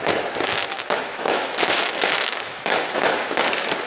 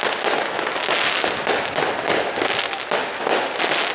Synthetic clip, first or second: first